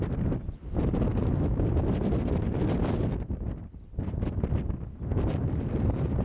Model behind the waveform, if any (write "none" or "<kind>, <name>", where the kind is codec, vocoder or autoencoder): vocoder, BigVGAN v2